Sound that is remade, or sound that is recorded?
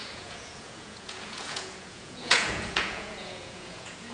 remade